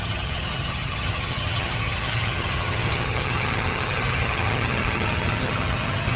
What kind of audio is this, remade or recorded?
remade